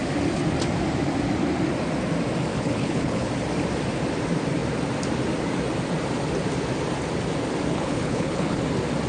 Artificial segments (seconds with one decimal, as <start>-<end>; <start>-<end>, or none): 2.5-3.3; 7.7-8.6